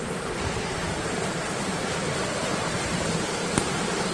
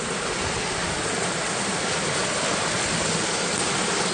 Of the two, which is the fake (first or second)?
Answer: first